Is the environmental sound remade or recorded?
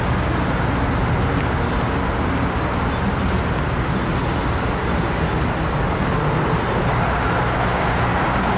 recorded